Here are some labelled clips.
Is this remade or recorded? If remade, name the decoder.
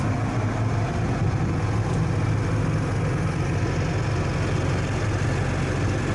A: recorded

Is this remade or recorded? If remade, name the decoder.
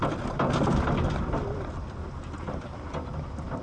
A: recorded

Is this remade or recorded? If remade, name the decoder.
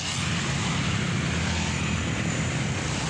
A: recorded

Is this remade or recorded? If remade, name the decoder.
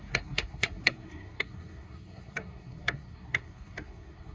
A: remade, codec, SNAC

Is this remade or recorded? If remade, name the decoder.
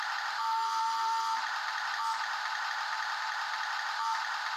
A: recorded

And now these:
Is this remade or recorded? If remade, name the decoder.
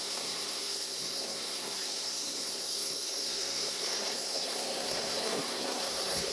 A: remade, codec, SNAC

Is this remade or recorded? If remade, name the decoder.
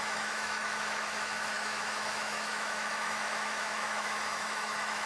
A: remade, autoencoder, DAC-VAE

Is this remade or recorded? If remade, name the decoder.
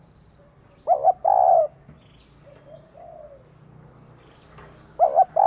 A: recorded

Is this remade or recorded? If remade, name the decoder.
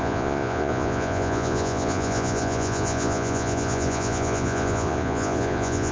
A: remade, vocoder, Vocos